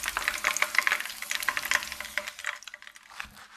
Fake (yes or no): no